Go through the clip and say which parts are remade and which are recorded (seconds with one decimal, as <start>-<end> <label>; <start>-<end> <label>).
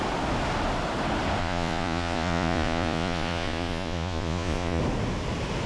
0.0-1.4 recorded; 1.4-4.8 remade; 4.8-5.7 recorded